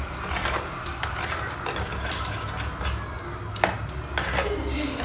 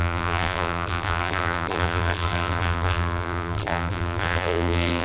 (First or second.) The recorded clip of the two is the first